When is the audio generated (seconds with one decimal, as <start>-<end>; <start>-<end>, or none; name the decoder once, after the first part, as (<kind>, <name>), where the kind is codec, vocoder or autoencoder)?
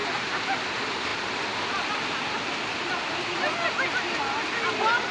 none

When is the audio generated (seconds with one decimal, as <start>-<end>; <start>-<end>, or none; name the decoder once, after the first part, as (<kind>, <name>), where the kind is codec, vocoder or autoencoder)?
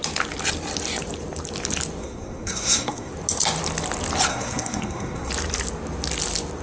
2.0-3.1 (codec, SNAC); 4.3-5.3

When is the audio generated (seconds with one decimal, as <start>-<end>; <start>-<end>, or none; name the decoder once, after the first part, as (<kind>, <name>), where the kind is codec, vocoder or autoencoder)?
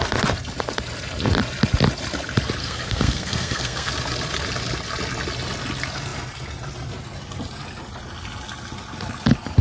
2.6-3.9 (codec, SNAC)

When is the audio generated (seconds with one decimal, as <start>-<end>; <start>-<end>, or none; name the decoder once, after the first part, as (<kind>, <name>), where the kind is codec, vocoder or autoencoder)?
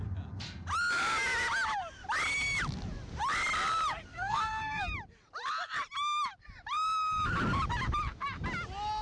4.1-4.8 (codec, SNAC)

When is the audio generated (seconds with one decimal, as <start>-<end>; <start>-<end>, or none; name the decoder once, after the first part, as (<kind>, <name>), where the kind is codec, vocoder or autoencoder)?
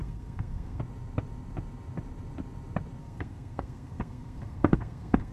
0.0-0.8 (codec, SNAC); 3.0-5.3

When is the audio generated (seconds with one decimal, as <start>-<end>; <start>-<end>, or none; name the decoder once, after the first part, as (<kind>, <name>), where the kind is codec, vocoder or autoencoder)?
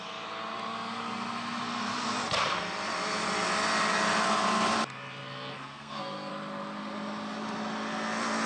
5.5-6.3 (codec, SNAC)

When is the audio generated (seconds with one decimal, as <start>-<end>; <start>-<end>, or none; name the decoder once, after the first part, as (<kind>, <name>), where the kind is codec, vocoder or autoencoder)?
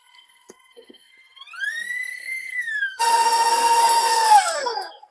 0.0-1.1 (codec, SNAC); 1.7-5.1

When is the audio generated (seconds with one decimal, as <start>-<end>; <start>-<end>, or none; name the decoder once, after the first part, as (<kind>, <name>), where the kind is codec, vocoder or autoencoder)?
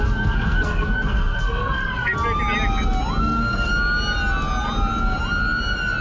0.0-1.8 (codec, SNAC); 3.2-3.7